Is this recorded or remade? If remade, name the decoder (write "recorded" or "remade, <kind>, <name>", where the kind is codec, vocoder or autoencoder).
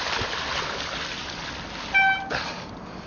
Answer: recorded